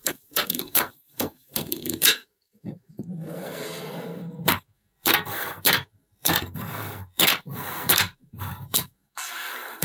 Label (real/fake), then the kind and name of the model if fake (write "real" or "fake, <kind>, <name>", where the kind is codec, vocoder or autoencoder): fake, codec, SNAC